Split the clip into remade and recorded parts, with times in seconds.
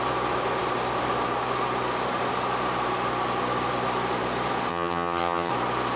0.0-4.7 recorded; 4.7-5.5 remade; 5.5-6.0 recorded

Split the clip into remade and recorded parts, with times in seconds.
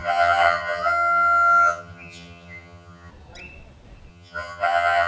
0.0-3.1 remade; 3.1-4.1 recorded; 4.1-5.1 remade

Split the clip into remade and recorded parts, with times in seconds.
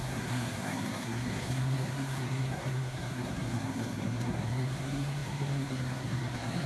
0.0-6.7 remade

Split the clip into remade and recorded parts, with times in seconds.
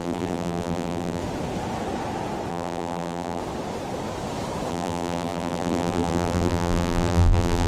0.0-1.2 remade; 1.2-2.5 recorded; 2.5-3.4 remade; 3.4-4.7 recorded; 4.7-7.7 remade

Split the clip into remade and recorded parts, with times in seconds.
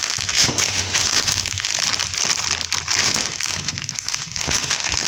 0.0-1.7 remade; 1.7-3.0 recorded; 3.0-5.1 remade